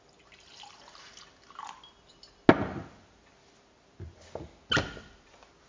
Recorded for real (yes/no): yes